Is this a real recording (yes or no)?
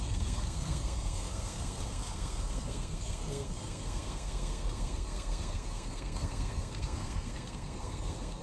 no